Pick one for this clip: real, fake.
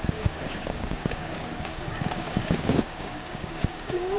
fake